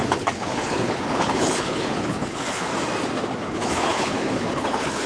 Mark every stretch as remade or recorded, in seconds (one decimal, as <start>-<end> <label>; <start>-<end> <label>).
0.0-2.7 remade; 2.7-3.4 recorded; 3.4-5.1 remade